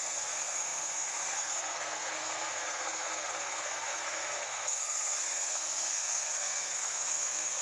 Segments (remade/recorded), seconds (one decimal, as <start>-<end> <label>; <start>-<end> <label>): 0.0-7.6 remade